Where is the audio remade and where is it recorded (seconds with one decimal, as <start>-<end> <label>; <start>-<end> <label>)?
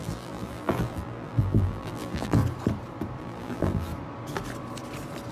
0.0-2.4 remade; 2.4-3.2 recorded; 3.2-3.9 remade; 3.9-5.3 recorded